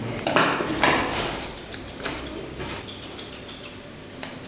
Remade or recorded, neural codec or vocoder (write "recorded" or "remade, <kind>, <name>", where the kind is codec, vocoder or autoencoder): recorded